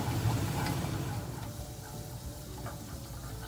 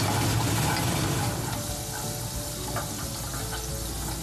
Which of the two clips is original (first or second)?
second